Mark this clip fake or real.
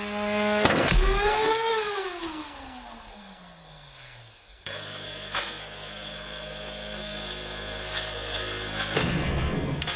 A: fake